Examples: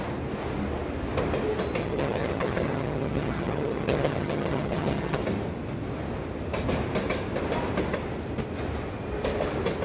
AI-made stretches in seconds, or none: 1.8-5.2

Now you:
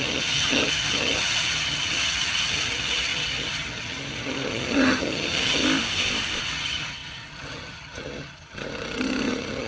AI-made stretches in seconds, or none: 0.0-5.6; 6.4-9.7

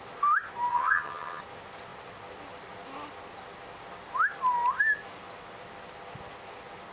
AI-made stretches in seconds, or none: 0.7-1.4

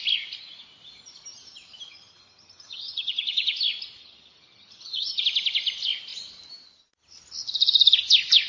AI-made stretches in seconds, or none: 1.9-3.6; 4.0-5.2